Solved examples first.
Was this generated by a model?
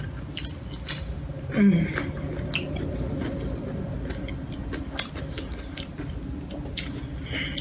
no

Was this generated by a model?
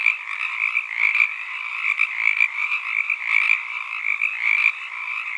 no